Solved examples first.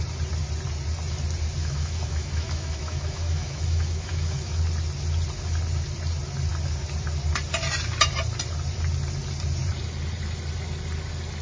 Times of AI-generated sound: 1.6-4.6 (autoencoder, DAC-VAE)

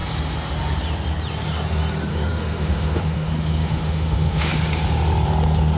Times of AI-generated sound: 2.1-4.5 (autoencoder, DAC-VAE)

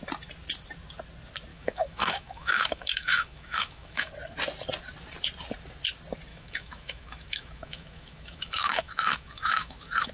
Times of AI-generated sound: 1.5-4.1 (autoencoder, DAC-VAE); 6.3-10.1

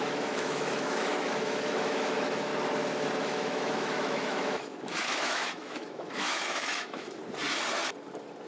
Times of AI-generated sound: 0.0-2.5 (autoencoder, DAC-VAE); 3.2-7.2

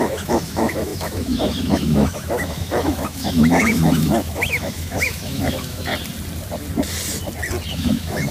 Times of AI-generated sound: 0.0-5.9 (autoencoder, DAC-VAE); 7.7-8.3

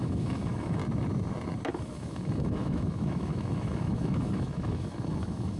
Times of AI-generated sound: 0.0-0.8 (autoencoder, DAC-VAE); 1.7-5.6